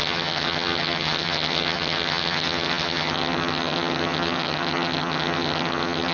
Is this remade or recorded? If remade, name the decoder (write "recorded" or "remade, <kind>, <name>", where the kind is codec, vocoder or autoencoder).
remade, vocoder, HiFi-GAN